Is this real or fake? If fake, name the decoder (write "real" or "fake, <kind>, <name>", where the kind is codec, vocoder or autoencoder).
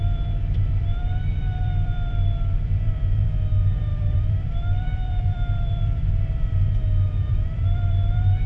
fake, vocoder, BigVGAN v2